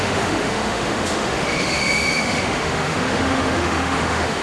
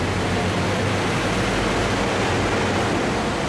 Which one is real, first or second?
second